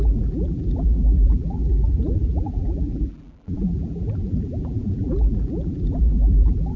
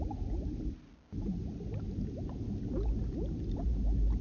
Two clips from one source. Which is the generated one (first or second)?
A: first